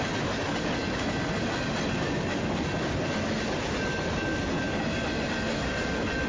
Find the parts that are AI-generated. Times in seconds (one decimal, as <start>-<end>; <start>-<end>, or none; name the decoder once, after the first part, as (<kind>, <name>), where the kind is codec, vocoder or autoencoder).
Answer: none